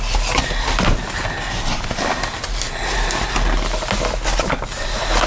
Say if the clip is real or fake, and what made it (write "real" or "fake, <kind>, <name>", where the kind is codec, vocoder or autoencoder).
real